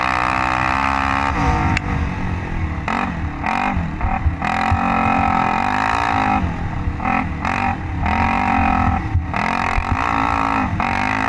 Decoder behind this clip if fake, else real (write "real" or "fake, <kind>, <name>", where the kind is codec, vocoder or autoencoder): real